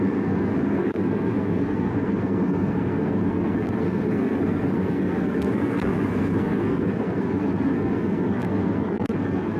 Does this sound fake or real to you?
fake